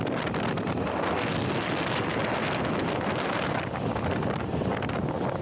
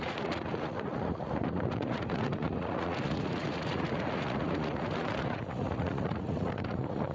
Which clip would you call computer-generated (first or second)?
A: second